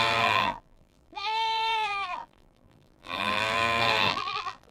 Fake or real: fake